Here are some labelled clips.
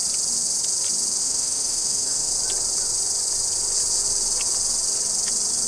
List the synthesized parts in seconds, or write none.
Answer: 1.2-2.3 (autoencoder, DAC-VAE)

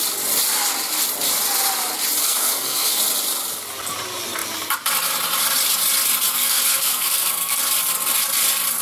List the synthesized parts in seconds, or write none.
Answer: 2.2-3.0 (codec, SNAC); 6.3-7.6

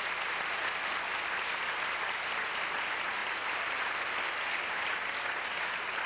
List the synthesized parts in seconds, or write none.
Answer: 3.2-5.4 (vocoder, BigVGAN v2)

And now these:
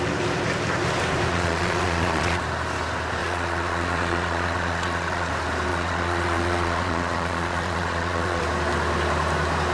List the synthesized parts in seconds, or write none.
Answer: 1.3-2.4 (vocoder, Vocos); 3.2-5.3; 5.7-8.4

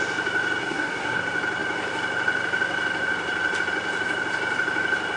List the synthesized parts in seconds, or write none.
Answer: 0.6-1.2 (codec, SNAC)